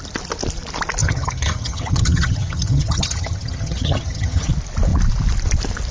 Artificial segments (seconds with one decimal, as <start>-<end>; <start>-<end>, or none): 1.0-4.5